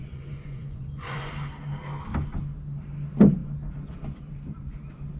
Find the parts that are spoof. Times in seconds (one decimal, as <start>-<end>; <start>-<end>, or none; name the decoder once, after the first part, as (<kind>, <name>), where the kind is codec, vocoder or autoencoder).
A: 0.0-1.3 (vocoder, Vocos)